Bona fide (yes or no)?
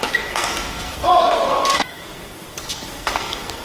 no